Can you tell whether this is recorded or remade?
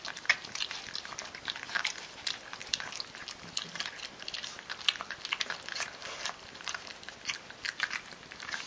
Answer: recorded